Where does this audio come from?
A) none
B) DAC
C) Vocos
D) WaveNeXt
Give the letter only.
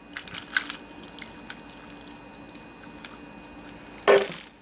A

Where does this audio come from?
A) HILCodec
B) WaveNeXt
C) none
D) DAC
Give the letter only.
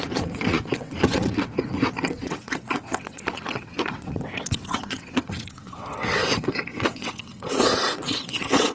B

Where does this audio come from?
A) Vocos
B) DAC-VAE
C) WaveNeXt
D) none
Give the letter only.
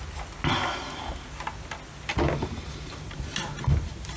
D